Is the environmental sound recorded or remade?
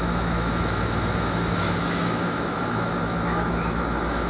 remade